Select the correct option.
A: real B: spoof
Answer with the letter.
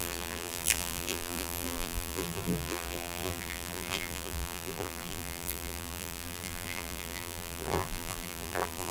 B